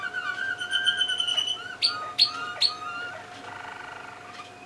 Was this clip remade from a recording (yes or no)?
no